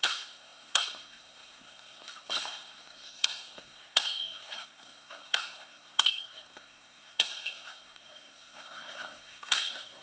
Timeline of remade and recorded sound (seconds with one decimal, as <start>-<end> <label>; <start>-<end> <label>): 0.0-10.0 remade